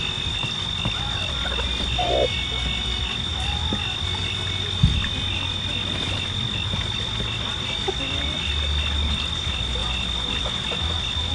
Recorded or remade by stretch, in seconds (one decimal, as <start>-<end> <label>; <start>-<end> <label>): 0.0-11.3 recorded